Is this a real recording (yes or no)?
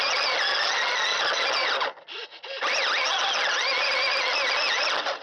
yes